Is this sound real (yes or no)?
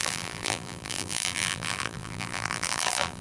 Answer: no